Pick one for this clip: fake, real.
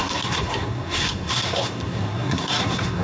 fake